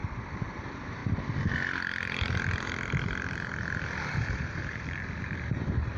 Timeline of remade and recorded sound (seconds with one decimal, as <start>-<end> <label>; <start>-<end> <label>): 0.0-0.6 recorded; 0.6-1.0 remade; 1.0-4.2 recorded; 4.2-6.0 remade